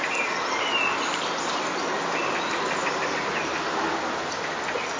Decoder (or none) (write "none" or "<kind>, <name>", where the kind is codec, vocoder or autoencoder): none